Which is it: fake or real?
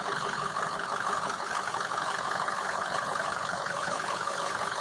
fake